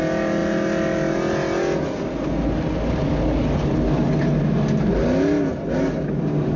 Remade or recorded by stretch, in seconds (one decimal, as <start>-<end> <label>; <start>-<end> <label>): 0.0-6.6 recorded